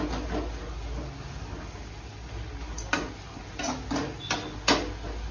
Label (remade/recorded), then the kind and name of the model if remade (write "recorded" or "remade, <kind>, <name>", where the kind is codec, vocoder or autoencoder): recorded